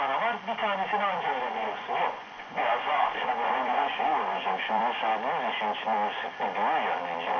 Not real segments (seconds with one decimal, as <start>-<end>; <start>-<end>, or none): 0.6-4.8